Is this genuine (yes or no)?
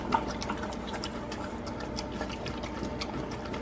yes